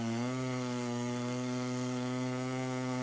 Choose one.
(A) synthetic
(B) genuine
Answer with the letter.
A